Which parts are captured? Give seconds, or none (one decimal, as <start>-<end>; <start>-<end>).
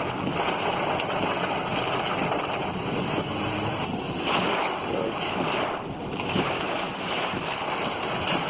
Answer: 0.0-8.5